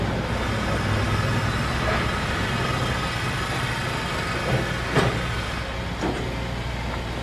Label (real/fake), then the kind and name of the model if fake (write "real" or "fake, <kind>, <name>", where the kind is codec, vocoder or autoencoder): real